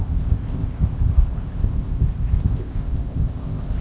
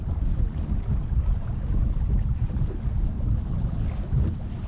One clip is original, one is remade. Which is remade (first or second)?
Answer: first